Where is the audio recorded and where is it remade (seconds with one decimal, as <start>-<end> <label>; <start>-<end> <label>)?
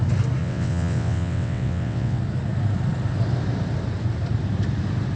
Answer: 0.0-0.4 recorded; 0.4-2.2 remade; 2.2-5.2 recorded